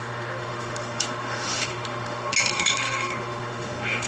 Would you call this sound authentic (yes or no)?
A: no